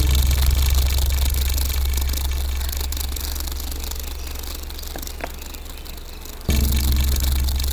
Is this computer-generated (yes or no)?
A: no